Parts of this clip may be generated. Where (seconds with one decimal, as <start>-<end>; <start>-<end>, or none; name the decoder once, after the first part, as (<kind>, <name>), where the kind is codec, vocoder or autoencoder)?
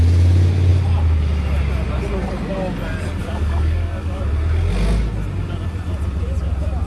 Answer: 3.2-4.2 (codec, DAC)